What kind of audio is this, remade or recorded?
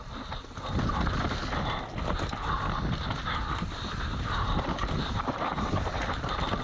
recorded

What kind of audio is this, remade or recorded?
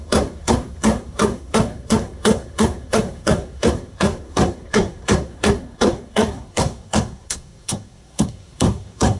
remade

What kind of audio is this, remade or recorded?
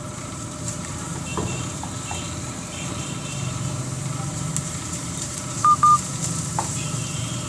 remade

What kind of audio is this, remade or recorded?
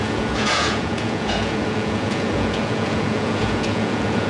remade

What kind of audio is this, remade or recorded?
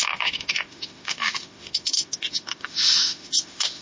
remade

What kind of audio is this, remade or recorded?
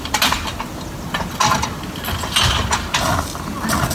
recorded